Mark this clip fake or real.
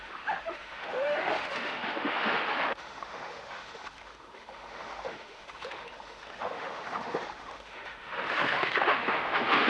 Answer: fake